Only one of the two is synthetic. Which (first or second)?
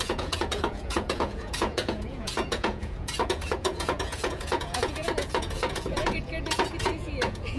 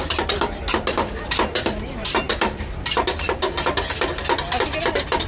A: first